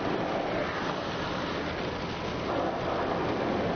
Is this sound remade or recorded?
recorded